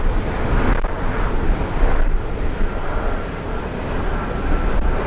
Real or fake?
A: real